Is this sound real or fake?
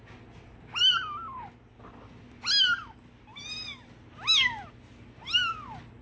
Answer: real